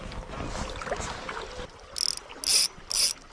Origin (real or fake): real